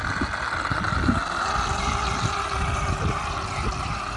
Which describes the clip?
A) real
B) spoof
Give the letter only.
A